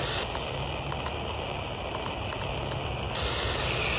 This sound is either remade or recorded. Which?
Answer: recorded